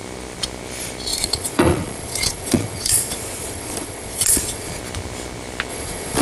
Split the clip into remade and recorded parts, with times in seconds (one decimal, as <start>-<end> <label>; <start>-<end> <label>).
0.0-1.1 recorded; 1.1-4.8 remade; 4.8-5.7 recorded; 5.7-6.2 remade

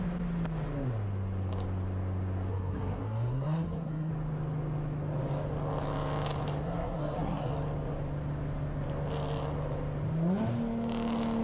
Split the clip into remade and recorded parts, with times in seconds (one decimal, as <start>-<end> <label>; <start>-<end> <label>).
0.0-2.5 recorded; 2.5-4.1 remade; 4.1-6.6 recorded; 6.6-7.5 remade; 7.5-11.4 recorded